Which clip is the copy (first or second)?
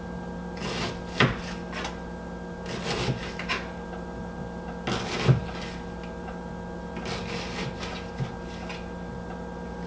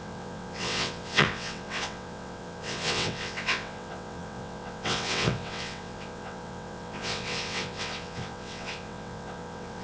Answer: second